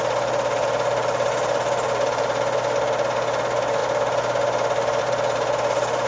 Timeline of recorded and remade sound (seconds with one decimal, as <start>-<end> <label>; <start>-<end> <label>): 0.0-6.1 recorded

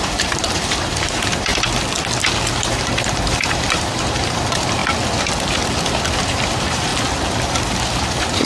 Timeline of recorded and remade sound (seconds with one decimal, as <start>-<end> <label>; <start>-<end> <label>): 0.0-1.5 remade; 1.5-2.5 recorded; 2.5-4.8 remade; 4.8-6.1 recorded; 6.1-6.9 remade; 6.9-8.1 recorded; 8.1-8.5 remade

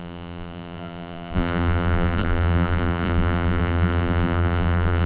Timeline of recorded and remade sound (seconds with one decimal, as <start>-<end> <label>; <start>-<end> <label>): 0.0-5.1 remade

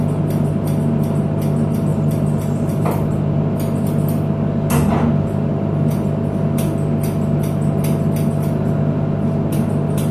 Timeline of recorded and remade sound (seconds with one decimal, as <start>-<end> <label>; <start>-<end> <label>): 0.0-1.9 recorded; 1.9-3.2 remade; 3.2-10.1 recorded

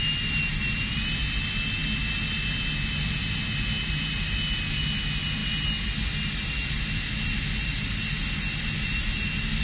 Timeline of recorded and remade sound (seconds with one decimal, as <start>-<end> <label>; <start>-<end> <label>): 0.0-9.6 recorded

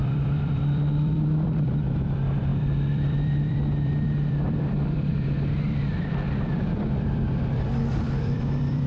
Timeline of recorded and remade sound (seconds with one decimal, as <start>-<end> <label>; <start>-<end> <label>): 0.0-8.9 remade